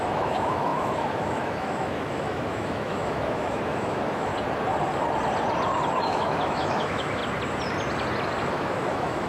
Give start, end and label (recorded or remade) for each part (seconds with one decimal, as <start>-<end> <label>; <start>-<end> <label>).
0.0-4.3 remade; 4.3-6.0 recorded; 6.0-7.2 remade; 7.2-8.5 recorded; 8.5-9.3 remade